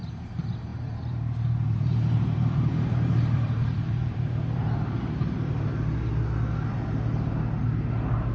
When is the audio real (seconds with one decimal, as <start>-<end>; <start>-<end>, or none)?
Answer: 5.7-8.3